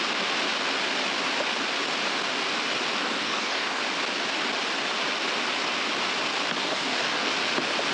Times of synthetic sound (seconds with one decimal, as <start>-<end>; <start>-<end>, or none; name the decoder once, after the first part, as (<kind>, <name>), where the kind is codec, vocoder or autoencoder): 3.0-3.8 (codec, DAC); 6.6-7.3